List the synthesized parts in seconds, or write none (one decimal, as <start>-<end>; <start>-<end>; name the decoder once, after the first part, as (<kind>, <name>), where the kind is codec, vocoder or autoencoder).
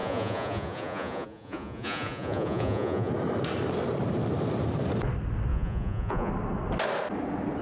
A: 0.0-3.1 (vocoder, Vocos); 5.5-6.3